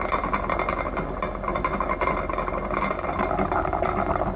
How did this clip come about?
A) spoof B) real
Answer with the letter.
B